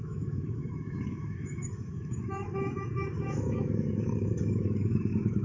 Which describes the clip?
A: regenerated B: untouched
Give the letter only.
A